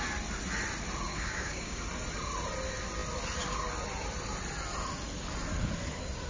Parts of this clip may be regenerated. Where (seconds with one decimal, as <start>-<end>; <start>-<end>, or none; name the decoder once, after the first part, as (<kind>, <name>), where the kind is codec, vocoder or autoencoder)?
1.1-1.8 (codec, DAC)